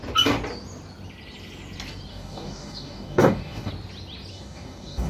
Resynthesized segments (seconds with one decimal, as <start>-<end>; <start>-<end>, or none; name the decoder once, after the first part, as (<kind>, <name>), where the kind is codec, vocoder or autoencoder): 2.1-3.7 (codec, DAC); 4.3-5.1